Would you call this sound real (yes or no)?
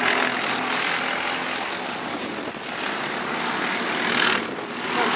yes